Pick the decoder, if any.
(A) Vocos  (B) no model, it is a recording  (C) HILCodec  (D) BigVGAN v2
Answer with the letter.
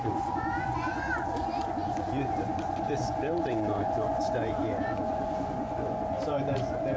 A